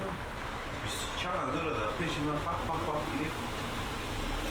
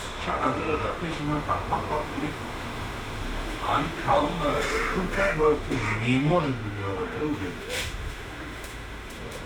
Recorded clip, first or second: first